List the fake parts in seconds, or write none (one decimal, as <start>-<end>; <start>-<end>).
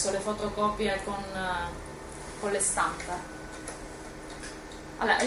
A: none